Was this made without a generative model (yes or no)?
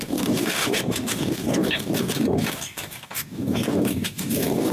no